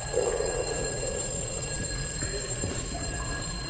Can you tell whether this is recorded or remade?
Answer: remade